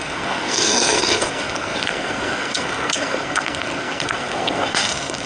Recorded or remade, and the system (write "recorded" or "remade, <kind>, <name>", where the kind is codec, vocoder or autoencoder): remade, codec, SNAC